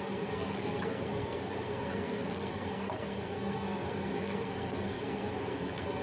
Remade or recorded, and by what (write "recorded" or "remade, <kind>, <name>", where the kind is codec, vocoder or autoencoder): remade, codec, SNAC